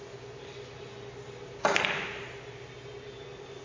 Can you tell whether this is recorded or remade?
recorded